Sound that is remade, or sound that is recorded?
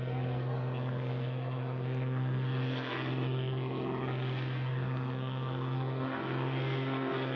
remade